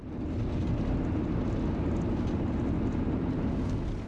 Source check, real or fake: real